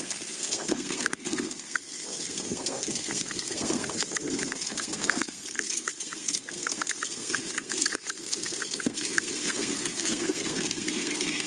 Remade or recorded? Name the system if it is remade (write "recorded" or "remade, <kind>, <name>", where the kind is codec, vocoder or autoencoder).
remade, codec, SNAC